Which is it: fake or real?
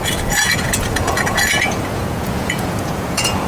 fake